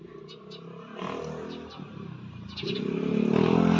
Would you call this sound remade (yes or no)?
no